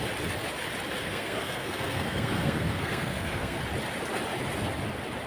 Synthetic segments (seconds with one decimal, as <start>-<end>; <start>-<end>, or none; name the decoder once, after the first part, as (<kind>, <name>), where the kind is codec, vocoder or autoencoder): 1.0-3.6 (codec, SNAC)